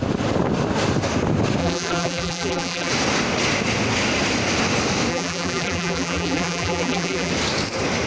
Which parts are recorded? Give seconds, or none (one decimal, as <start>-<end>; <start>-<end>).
0.0-1.6; 2.9-5.1; 7.3-8.1